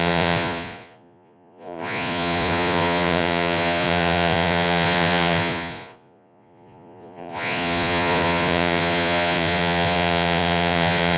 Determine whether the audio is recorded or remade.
remade